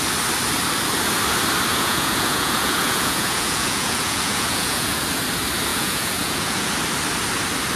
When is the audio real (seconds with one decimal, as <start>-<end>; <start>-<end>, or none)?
0.0-1.7; 5.0-5.7; 6.7-7.8